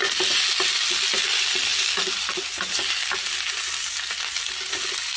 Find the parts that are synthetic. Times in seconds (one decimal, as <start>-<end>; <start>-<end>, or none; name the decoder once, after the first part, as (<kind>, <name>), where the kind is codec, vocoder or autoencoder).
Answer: none